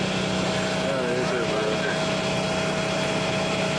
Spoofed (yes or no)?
no